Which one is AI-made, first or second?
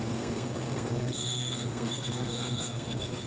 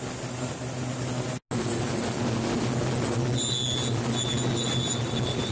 first